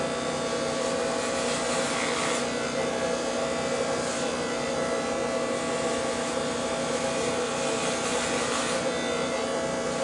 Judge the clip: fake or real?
real